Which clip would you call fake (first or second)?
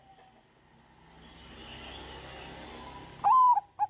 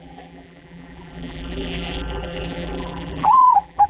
second